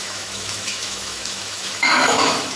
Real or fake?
fake